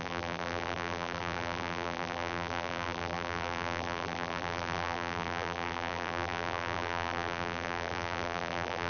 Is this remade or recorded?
remade